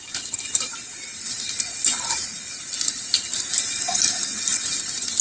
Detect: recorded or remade recorded